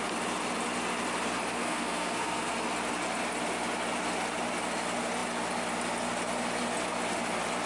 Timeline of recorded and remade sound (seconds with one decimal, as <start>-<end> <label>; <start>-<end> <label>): 0.0-1.6 recorded; 1.6-2.5 remade; 2.5-7.7 recorded